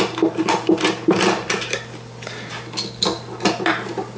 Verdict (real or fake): real